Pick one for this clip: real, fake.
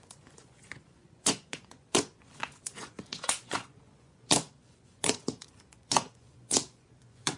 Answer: fake